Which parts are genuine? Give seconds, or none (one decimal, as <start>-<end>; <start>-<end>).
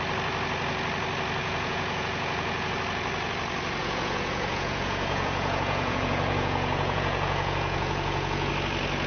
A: 0.0-1.4; 2.7-3.8; 8.5-9.1